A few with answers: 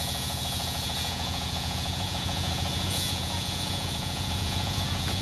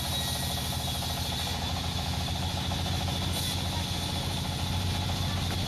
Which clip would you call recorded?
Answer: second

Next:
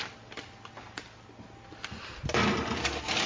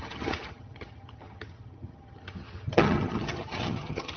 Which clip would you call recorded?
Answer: first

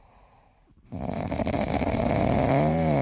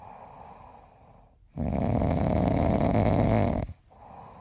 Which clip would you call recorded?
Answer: second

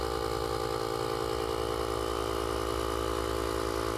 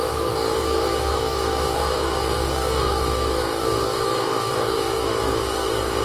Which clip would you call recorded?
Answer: first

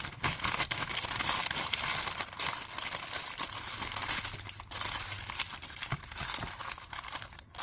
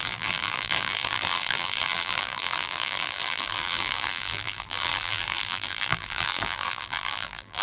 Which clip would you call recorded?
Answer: first